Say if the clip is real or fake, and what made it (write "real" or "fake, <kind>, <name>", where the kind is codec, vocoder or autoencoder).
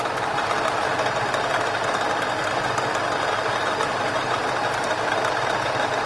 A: real